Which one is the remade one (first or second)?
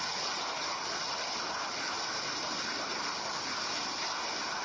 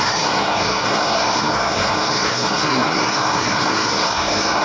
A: second